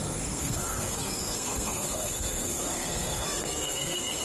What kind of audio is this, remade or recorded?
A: remade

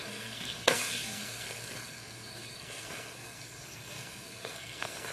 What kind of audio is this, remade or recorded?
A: remade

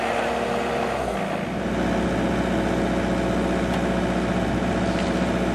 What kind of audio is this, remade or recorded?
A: recorded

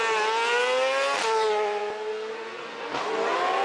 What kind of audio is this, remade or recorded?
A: recorded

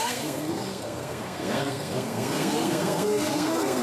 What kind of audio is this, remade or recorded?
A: remade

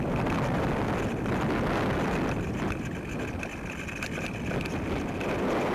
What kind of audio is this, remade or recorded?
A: recorded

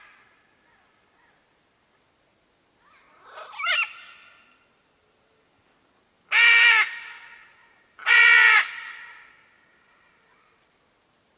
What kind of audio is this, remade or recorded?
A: recorded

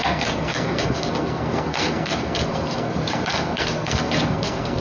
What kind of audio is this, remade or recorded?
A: remade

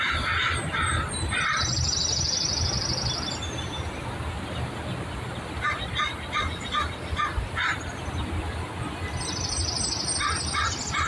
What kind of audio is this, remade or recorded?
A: recorded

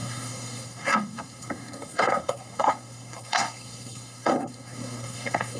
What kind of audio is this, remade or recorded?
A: remade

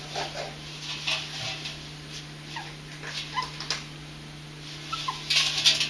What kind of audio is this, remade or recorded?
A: recorded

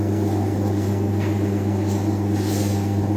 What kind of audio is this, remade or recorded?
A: remade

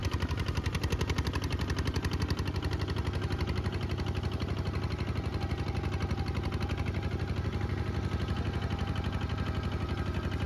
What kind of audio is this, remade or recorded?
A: recorded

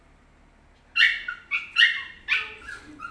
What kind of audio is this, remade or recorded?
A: recorded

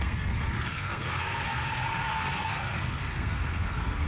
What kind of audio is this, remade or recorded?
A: remade